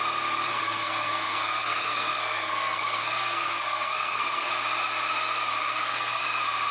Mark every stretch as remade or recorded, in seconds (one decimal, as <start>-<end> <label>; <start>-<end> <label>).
0.0-0.5 recorded; 0.5-4.5 remade; 4.5-5.6 recorded; 5.6-6.2 remade; 6.2-6.7 recorded